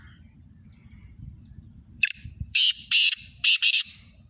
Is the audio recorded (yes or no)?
no